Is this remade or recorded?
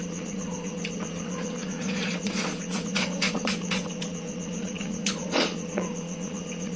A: remade